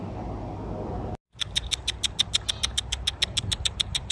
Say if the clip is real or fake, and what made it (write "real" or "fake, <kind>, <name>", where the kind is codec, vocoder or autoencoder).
real